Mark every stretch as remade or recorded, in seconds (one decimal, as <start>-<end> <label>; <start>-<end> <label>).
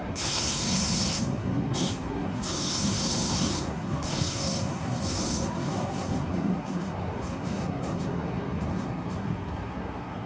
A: 0.0-10.3 remade